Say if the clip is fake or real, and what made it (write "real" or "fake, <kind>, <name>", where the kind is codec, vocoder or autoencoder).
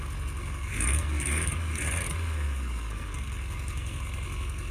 fake, codec, SNAC